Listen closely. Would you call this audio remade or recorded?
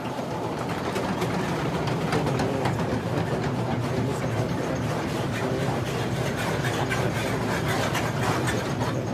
recorded